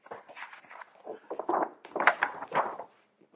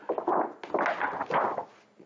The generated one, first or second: first